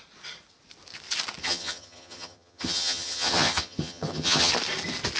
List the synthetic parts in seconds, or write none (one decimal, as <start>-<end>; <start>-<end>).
1.4-4.5